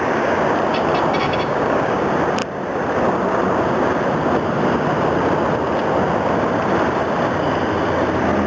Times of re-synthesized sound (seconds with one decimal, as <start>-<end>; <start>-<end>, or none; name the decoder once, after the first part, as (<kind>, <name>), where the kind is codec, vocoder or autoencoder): 1.2-2.0 (codec, DAC)